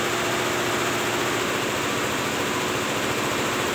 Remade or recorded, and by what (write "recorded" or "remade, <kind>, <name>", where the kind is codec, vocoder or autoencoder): recorded